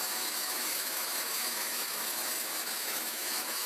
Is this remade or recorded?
remade